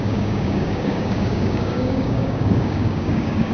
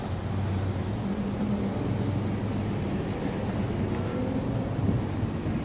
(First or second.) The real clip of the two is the second